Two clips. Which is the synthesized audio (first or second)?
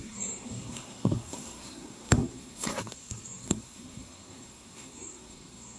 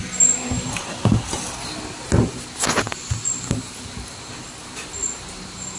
first